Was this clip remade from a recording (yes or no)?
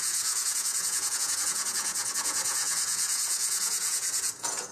yes